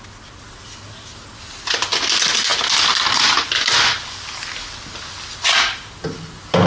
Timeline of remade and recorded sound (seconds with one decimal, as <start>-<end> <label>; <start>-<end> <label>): 0.0-6.7 recorded